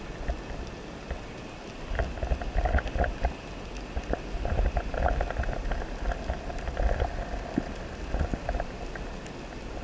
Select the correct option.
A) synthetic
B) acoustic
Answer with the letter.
B